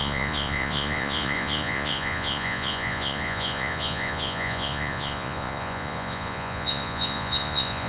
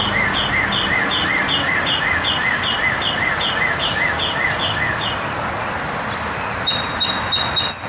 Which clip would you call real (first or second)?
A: second